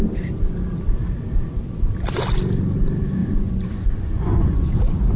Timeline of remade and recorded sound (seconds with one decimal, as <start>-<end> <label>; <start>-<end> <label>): 0.0-3.2 recorded; 3.2-4.7 remade; 4.7-5.2 recorded